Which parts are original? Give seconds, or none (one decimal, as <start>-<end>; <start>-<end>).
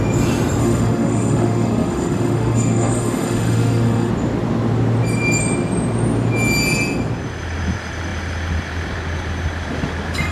0.0-0.6; 4.1-10.3